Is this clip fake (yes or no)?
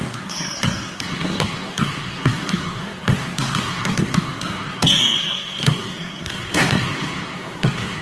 yes